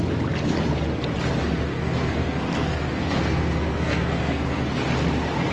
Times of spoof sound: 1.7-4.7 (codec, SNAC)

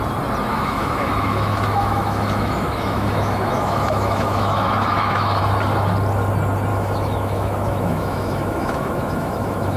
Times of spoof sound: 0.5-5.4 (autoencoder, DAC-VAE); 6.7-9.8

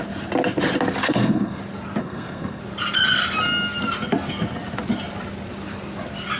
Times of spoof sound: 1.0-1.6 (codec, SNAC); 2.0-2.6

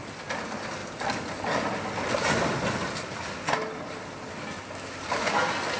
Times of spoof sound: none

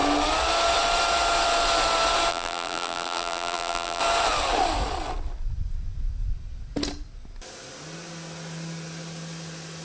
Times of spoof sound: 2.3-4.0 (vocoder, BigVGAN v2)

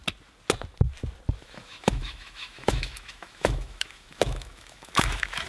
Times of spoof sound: 1.4-5.5 (autoencoder, DAC-VAE)